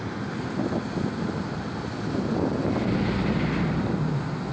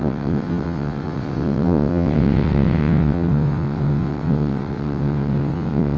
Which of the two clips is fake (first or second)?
second